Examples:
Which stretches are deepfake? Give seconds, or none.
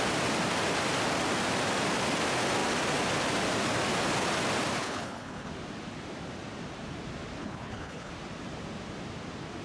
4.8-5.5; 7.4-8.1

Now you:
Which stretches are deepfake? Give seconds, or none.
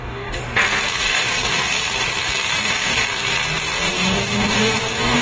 0.0-0.4; 1.0-1.8; 2.5-3.1; 3.9-5.2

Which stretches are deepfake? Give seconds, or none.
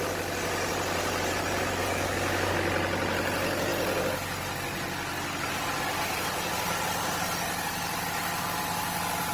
1.8-2.5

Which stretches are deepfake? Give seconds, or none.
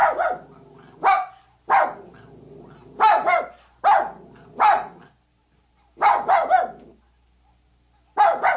none